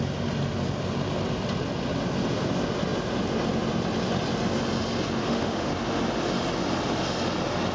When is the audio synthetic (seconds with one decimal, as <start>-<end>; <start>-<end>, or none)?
5.2-5.7